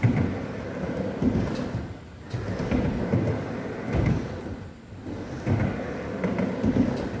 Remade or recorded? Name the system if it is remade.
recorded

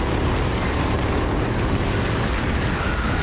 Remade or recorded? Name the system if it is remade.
remade, codec, DAC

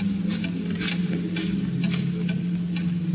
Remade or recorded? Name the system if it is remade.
recorded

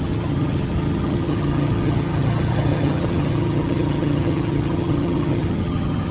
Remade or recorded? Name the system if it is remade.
remade, vocoder, HiFi-GAN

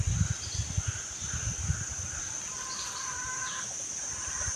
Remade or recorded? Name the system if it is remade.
recorded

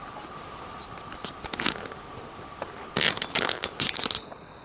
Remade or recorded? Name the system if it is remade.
recorded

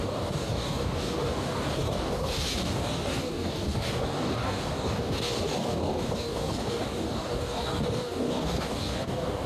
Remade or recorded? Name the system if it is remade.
remade, codec, DAC